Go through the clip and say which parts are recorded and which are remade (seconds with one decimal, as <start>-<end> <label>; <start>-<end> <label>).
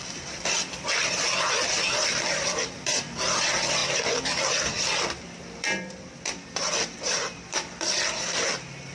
0.0-8.9 remade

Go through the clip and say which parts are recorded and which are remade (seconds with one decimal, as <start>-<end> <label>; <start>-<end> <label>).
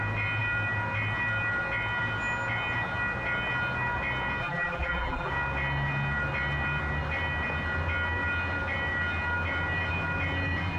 0.0-4.4 recorded; 4.4-5.3 remade; 5.3-10.8 recorded